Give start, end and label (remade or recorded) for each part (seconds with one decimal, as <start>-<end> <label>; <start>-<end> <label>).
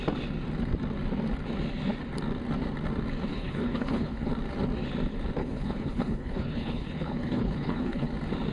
0.0-3.3 recorded; 3.3-4.3 remade; 4.3-5.4 recorded; 5.4-8.1 remade; 8.1-8.5 recorded